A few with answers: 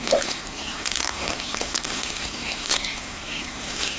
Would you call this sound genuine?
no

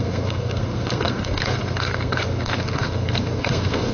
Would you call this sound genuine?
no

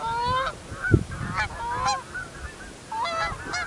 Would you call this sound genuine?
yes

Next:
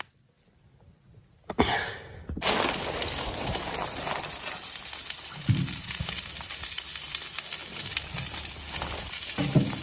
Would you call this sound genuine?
yes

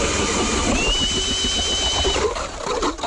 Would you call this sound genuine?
yes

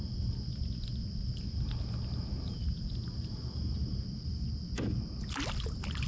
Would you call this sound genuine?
yes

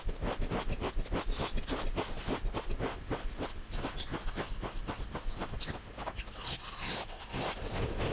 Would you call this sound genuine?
yes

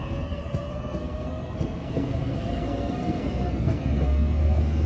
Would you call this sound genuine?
no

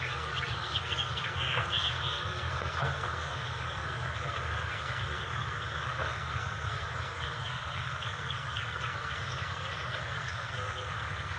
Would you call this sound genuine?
no